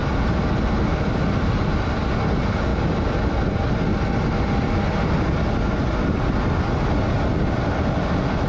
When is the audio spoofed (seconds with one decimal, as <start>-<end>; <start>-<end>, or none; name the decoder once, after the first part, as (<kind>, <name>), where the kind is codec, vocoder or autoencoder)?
none